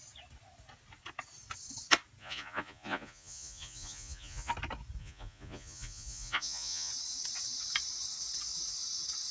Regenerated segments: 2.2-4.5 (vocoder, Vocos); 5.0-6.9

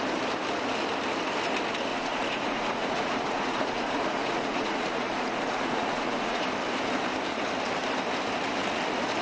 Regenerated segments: 1.9-6.4 (vocoder, Vocos)